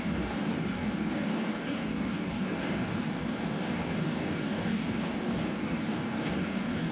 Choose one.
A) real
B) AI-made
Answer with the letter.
B